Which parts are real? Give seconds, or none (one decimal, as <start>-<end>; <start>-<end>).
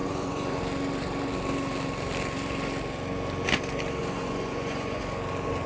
0.6-4.0; 5.0-5.7